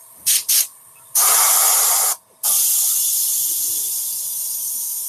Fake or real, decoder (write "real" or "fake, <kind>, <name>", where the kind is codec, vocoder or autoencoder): real